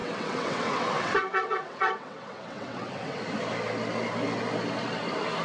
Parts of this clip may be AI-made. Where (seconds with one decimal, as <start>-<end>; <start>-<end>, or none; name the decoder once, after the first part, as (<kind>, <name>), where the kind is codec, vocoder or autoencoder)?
0.0-3.2 (vocoder, WaveNeXt)